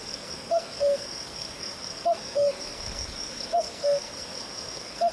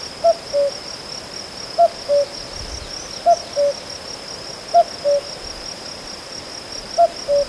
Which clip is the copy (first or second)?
first